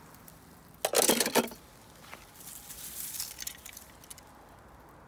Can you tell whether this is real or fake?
real